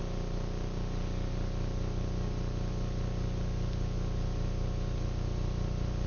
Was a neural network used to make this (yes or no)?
no